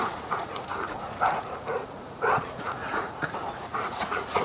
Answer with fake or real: fake